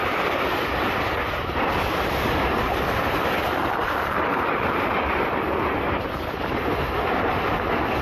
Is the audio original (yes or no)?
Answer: yes